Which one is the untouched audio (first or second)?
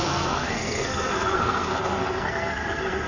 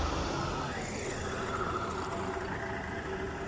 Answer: second